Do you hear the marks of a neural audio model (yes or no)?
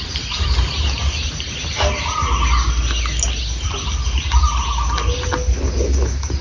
no